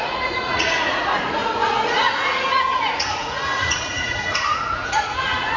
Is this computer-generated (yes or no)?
yes